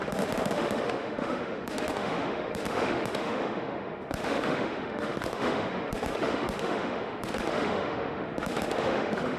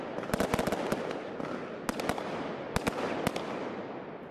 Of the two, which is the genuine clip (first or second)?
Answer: second